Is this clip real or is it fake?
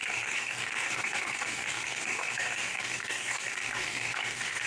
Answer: fake